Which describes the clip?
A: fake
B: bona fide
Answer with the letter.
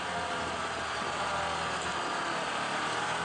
B